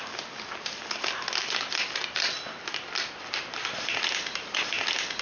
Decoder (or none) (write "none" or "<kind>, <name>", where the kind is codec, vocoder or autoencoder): none